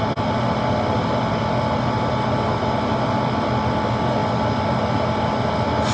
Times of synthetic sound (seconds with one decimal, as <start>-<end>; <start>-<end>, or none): none